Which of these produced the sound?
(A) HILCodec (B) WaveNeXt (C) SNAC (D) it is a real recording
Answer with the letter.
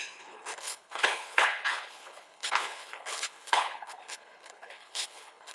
A